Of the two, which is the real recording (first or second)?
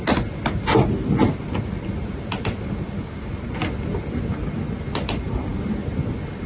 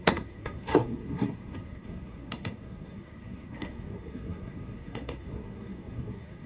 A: first